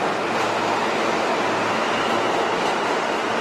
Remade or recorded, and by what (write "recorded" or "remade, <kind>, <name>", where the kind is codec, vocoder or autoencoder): recorded